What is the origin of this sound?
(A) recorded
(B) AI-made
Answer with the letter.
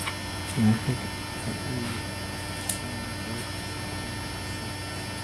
A